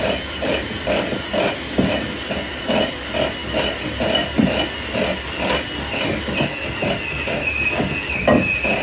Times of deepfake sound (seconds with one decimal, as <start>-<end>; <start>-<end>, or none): none